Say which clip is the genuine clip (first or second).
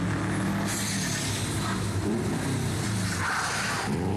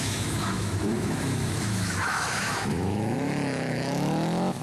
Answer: first